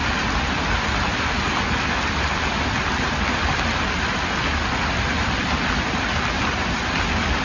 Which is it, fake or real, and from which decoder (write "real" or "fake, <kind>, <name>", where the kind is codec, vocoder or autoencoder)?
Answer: real